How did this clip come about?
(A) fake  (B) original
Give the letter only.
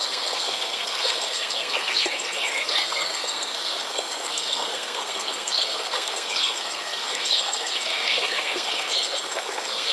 A